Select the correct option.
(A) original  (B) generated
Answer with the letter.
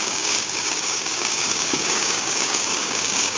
B